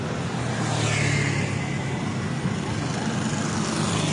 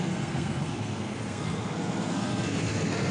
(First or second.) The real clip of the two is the first